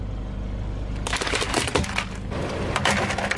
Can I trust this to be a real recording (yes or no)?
yes